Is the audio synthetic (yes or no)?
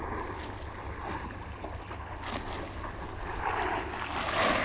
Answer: no